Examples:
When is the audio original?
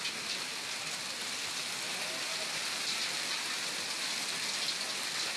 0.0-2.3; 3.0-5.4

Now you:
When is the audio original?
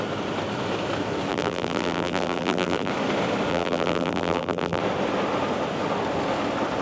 0.0-1.3; 2.9-3.5; 4.8-6.8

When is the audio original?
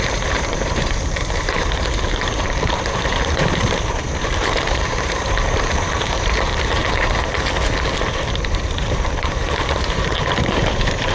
6.8-8.1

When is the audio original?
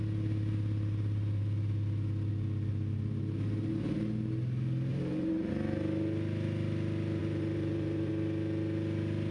0.0-2.7; 3.7-4.9; 5.5-7.2; 8.1-9.3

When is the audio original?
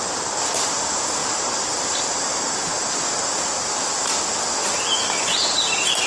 0.0-1.2; 2.1-6.1